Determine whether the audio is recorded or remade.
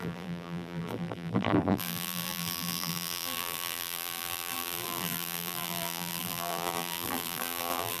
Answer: remade